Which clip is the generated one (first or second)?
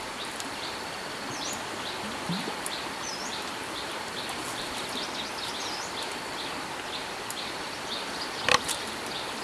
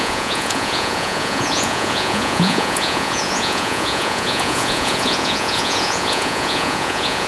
second